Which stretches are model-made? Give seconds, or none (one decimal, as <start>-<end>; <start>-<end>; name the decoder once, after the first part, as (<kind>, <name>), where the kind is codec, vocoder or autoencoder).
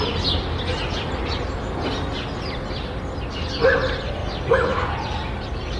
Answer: 4.2-4.9 (vocoder, BigVGAN v2)